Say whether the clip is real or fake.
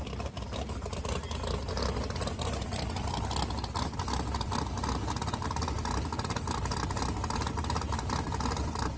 real